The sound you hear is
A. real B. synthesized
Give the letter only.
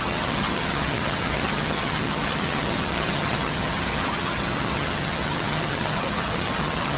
B